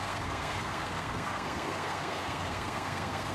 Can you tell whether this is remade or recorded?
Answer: remade